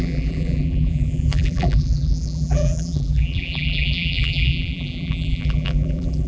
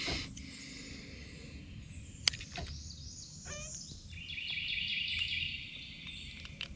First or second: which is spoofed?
first